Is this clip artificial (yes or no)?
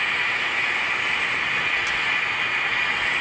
no